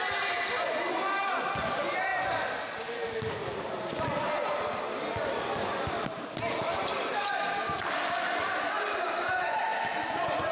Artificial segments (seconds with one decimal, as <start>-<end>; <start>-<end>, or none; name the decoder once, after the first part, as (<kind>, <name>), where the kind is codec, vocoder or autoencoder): none